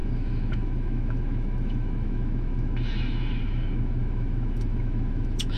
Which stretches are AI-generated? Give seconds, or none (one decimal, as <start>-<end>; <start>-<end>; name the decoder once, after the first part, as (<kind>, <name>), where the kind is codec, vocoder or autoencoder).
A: 0.0-5.6 (autoencoder, DAC-VAE)